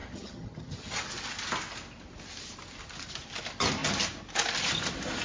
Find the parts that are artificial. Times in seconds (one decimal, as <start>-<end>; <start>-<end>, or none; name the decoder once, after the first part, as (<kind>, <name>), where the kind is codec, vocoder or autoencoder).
0.0-1.1 (vocoder, HiFi-GAN)